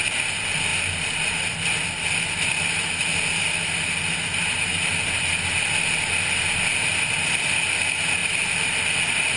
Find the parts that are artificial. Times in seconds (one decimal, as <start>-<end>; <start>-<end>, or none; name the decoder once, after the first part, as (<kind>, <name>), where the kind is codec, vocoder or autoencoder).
none